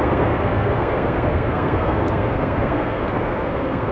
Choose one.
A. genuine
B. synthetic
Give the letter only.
B